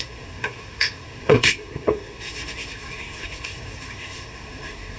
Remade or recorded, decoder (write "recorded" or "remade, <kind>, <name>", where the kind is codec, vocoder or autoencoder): remade, codec, SNAC